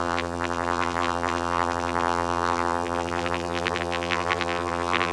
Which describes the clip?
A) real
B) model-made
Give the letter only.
B